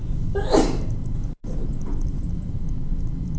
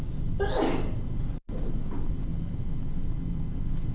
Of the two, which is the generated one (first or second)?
first